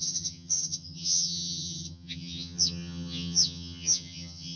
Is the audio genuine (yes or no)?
no